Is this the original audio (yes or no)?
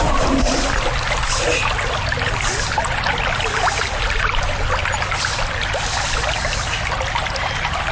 yes